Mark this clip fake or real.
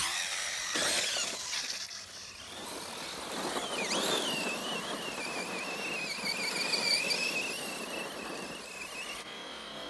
real